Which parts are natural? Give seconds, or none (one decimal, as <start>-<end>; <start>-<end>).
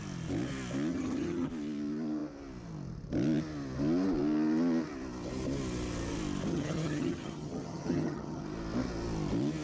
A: 0.0-0.9; 1.5-6.5; 8.4-9.6